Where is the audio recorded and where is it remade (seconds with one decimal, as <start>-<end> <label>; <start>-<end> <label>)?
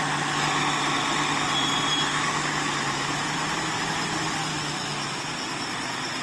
0.0-2.1 recorded; 2.1-3.1 remade; 3.1-4.5 recorded; 4.5-5.2 remade; 5.2-6.2 recorded